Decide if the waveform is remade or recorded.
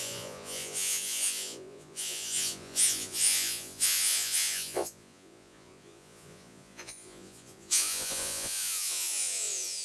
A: remade